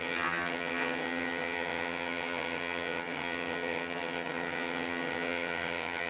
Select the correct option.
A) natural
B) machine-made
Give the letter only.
B